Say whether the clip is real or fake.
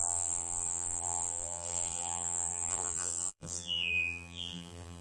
fake